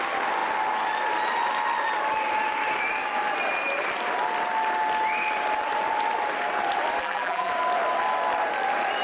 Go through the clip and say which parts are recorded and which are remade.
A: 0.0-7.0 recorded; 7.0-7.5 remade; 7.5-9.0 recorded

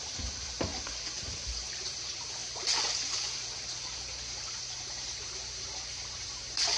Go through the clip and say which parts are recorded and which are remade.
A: 0.0-0.7 remade; 0.7-1.7 recorded; 1.7-2.4 remade; 2.4-4.5 recorded; 4.5-6.8 remade